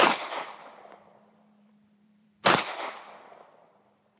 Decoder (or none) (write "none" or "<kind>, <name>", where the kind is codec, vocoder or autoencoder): vocoder, BigVGAN v2